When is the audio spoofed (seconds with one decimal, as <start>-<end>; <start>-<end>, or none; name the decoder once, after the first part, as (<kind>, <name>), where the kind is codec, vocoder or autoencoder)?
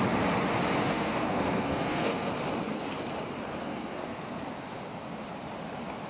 0.9-2.3 (codec, SNAC); 3.6-4.4